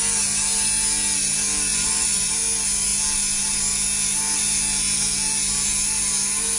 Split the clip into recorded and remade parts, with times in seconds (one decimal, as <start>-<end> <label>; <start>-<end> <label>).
0.0-1.7 recorded; 1.7-2.3 remade; 2.3-6.6 recorded